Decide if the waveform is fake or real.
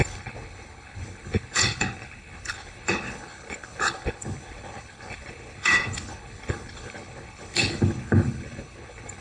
fake